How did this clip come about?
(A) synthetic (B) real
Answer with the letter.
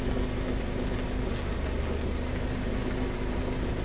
B